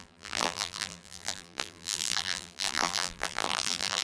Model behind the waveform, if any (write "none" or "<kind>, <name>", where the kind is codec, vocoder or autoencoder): vocoder, BigVGAN v2